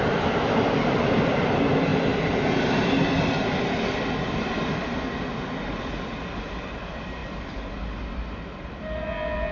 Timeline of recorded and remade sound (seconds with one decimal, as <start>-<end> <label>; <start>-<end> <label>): 0.0-9.5 recorded